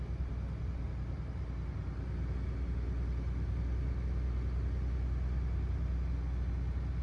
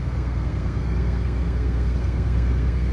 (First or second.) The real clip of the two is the first